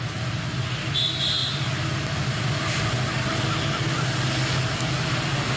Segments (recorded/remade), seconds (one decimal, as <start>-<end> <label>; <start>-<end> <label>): 0.0-5.6 recorded

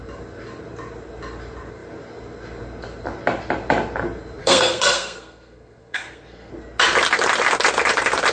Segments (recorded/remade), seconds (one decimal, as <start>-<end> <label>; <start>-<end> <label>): 0.0-4.4 recorded; 4.4-6.5 remade; 6.5-8.3 recorded

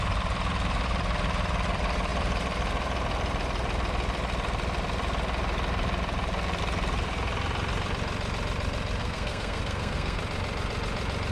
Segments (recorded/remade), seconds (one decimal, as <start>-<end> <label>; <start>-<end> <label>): 0.0-9.0 recorded; 9.0-10.2 remade; 10.2-11.3 recorded

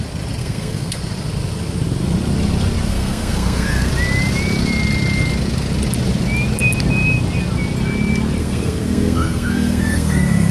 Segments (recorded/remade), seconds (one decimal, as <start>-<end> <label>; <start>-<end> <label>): 0.0-0.4 recorded; 0.4-1.0 remade; 1.0-2.9 recorded; 2.9-3.9 remade; 3.9-8.4 recorded; 8.4-10.5 remade